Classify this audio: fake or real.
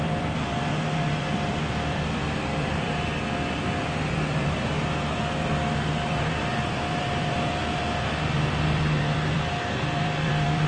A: fake